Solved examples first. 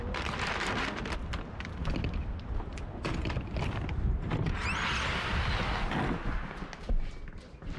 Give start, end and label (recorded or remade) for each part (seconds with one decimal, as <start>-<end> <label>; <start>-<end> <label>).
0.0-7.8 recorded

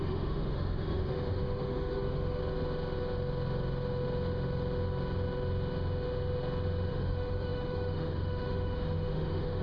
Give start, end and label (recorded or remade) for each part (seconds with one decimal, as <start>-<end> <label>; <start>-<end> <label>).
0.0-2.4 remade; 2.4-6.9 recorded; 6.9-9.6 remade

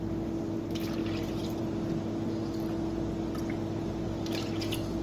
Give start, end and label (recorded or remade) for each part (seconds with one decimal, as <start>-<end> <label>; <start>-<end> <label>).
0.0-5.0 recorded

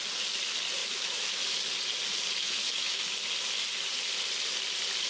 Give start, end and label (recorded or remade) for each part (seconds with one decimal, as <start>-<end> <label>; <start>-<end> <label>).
0.0-0.8 recorded; 0.8-1.4 remade; 1.4-2.4 recorded; 2.4-3.0 remade; 3.0-5.1 recorded

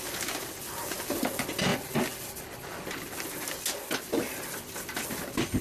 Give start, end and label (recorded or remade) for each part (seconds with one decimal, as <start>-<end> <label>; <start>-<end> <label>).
0.0-5.6 recorded

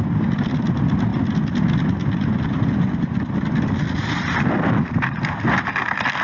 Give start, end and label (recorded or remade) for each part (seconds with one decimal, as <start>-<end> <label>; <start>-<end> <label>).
0.0-6.2 recorded

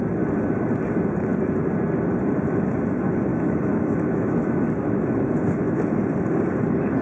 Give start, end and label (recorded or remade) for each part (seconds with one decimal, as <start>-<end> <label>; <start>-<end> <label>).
0.0-3.3 recorded; 3.3-4.9 remade; 4.9-7.0 recorded

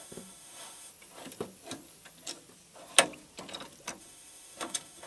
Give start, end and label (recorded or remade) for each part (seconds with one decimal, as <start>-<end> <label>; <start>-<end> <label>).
0.0-0.9 remade; 0.9-4.0 recorded; 4.0-5.1 remade